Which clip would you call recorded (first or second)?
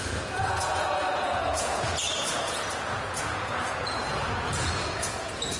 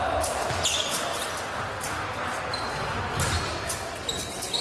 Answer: second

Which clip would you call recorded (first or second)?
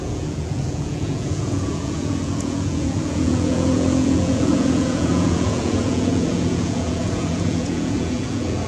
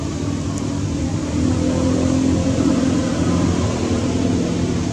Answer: second